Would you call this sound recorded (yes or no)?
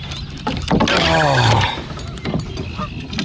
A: yes